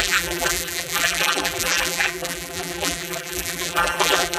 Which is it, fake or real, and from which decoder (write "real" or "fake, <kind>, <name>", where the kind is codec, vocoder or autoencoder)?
fake, vocoder, BigVGAN v2